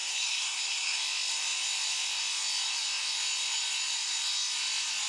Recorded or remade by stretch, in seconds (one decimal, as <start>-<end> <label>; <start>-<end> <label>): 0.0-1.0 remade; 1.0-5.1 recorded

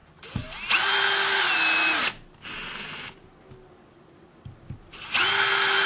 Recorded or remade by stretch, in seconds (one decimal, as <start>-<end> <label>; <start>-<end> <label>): 0.0-5.9 recorded

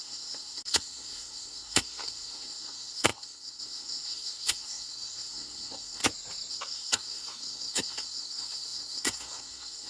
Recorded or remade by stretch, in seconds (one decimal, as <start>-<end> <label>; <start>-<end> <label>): 0.0-6.0 remade; 6.0-6.5 recorded; 6.5-9.9 remade

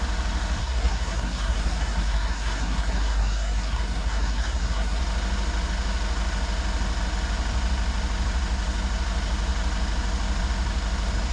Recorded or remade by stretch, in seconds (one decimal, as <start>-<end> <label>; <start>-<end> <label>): 0.0-0.6 recorded; 0.6-5.0 remade; 5.0-11.3 recorded